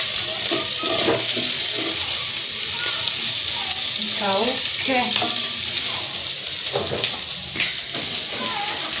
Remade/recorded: remade